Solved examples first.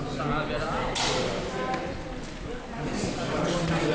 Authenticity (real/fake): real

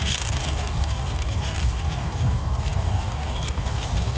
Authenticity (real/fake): fake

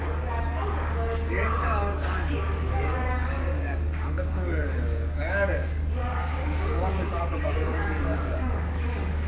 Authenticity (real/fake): fake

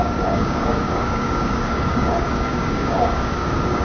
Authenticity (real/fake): fake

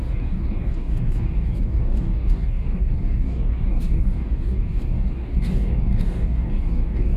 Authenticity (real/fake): fake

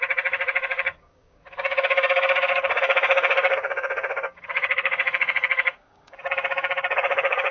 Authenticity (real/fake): fake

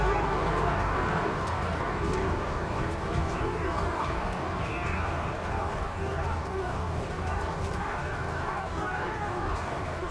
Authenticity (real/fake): fake